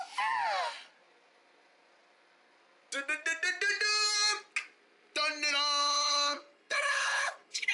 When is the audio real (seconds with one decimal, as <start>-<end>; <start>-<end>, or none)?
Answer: 0.0-5.8